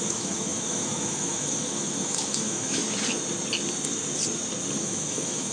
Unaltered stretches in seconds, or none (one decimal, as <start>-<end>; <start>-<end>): 2.8-4.8